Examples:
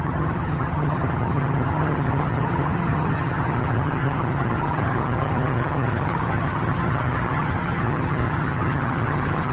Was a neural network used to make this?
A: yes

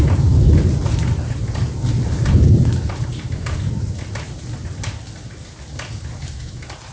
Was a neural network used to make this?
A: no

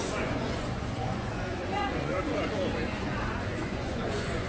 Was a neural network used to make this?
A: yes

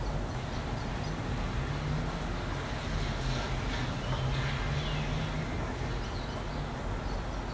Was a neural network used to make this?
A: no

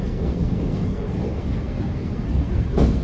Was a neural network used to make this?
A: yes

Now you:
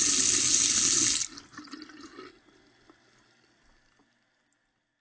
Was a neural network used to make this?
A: no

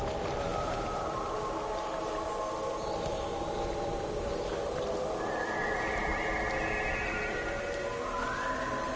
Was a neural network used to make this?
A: no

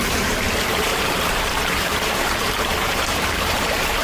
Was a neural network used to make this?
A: yes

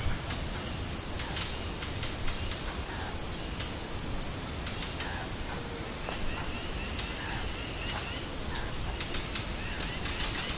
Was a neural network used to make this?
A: no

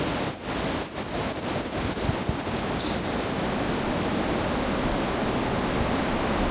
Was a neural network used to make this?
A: no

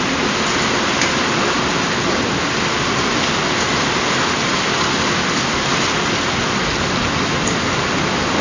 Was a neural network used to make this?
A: no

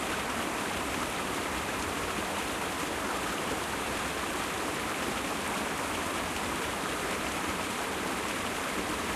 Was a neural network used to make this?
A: no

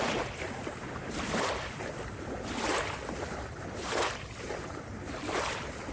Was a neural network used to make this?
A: no